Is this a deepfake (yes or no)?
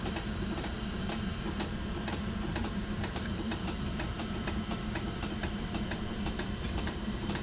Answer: yes